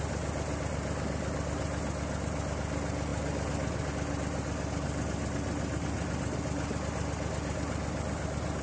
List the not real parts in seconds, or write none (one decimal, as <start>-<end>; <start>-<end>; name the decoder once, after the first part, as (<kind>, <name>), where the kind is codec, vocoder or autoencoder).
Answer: none